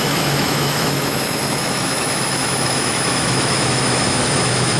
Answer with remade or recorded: remade